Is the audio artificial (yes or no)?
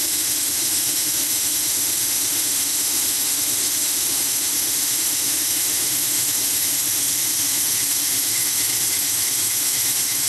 yes